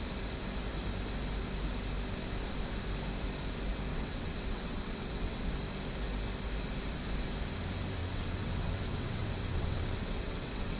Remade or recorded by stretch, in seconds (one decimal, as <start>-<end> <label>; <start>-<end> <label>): 0.0-3.9 recorded; 3.9-5.5 remade; 5.5-8.0 recorded; 8.0-10.8 remade